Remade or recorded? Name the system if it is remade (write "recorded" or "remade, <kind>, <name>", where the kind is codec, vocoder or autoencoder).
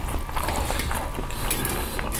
recorded